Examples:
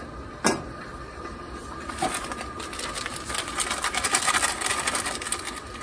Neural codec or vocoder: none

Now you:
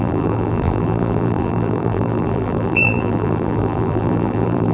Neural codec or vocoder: vocoder, BigVGAN v2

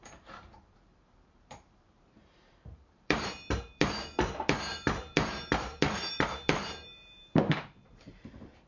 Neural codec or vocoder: vocoder, BigVGAN v2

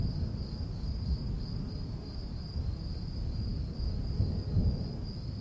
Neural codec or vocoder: none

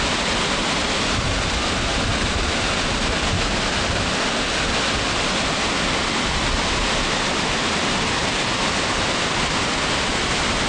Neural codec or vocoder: none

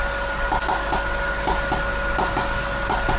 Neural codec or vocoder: none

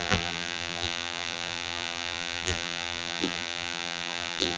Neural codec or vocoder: vocoder, BigVGAN v2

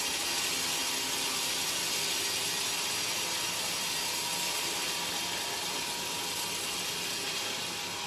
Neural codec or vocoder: none